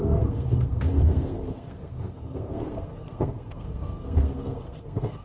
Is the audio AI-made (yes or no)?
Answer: yes